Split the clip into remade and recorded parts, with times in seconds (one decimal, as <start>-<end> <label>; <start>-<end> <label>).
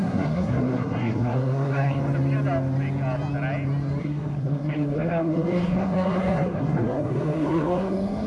0.0-2.0 remade; 2.0-4.0 recorded; 4.0-8.3 remade